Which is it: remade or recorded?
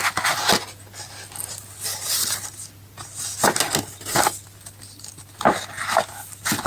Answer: recorded